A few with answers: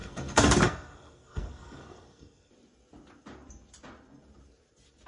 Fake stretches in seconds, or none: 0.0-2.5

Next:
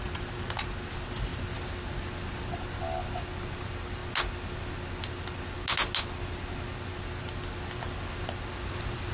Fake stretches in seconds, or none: none

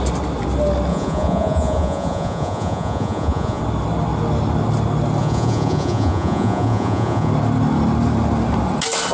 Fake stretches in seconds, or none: 0.9-3.6; 5.2-7.3

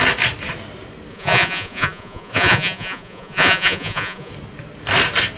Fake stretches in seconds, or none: 1.1-4.3

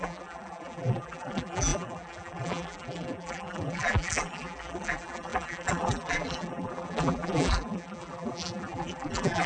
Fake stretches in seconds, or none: 0.0-9.5

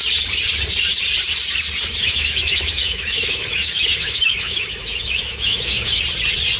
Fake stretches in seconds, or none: 2.0-6.0

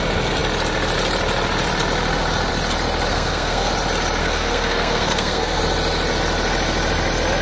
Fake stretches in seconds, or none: 3.1-3.7; 4.2-5.6

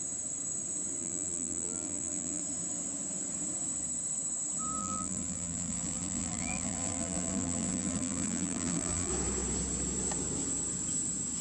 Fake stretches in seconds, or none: 1.0-2.4; 4.8-9.1